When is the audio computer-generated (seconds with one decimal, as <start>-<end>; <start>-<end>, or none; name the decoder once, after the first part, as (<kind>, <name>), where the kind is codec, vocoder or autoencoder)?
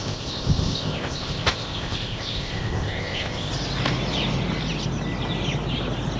0.0-3.5 (codec, ZipCodec)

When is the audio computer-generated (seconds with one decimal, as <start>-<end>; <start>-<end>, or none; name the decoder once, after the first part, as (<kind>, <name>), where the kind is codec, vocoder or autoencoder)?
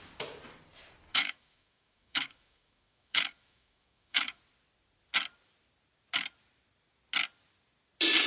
1.1-4.4 (autoencoder, DAC-VAE)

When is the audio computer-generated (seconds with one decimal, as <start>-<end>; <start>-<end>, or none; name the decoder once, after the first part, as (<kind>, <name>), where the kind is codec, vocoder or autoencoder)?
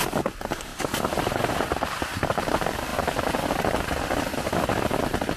none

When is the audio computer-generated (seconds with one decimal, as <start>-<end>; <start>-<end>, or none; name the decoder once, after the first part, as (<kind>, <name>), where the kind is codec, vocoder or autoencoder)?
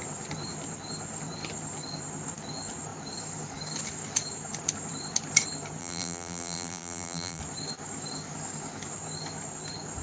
5.8-7.4 (vocoder, BigVGAN v2)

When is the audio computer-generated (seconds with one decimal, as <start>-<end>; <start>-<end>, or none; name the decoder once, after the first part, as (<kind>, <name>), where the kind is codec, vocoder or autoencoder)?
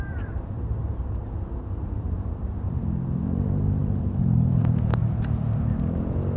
0.0-5.0 (vocoder, BigVGAN v2)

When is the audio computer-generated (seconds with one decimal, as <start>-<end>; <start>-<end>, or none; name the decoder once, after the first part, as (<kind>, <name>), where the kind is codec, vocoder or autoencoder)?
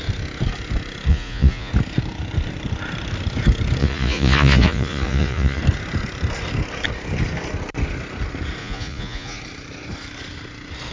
1.1-1.7 (vocoder, Vocos); 3.8-5.6; 8.6-9.4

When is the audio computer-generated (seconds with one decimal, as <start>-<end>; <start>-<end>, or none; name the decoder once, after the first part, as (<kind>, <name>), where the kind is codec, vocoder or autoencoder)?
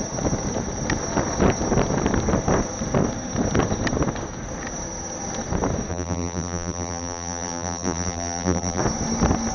5.9-8.8 (vocoder, BigVGAN v2)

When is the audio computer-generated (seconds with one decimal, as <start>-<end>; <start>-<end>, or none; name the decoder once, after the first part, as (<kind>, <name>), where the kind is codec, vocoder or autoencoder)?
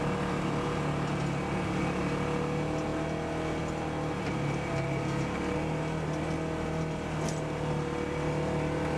none